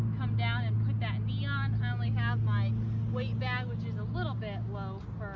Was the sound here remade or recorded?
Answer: recorded